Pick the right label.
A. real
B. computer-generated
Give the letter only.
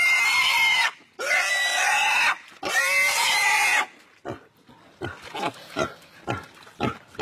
A